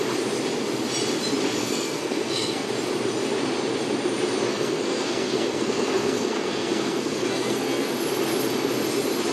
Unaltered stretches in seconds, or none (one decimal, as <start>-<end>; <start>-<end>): 0.0-1.6; 2.7-4.5; 7.9-9.3